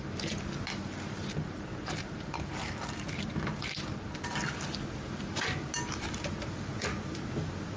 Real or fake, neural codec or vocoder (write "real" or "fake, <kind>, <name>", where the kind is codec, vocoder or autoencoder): real